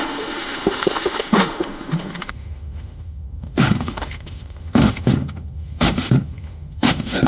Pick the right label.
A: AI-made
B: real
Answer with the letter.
A